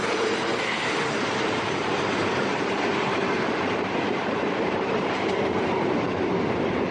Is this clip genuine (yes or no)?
no